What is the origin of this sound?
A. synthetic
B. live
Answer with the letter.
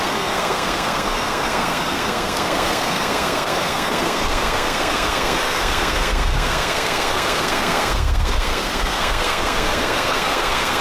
A